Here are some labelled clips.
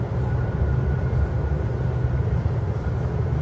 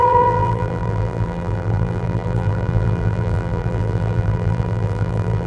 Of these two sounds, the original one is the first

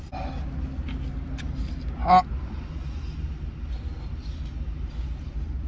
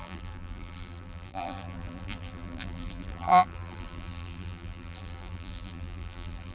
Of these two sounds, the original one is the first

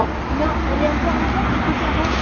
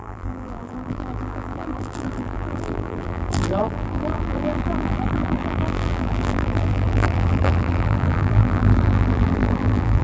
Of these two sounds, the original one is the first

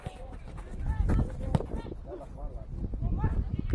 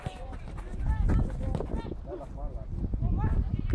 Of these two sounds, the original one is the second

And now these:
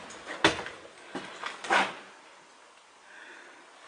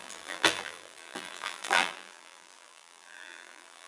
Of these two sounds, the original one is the first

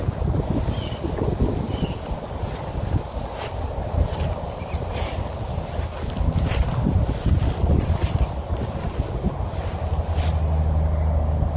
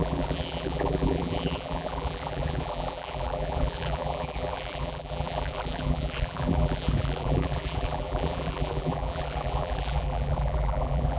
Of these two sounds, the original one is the first